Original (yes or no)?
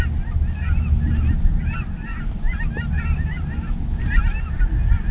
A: yes